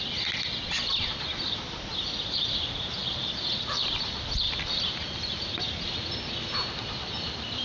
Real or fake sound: real